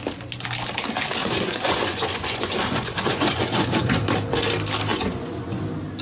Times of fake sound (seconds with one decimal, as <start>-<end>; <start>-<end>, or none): 1.2-4.0; 4.9-5.6